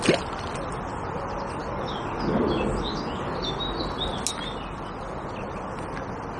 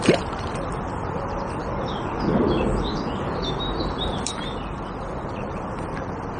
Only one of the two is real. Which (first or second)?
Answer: first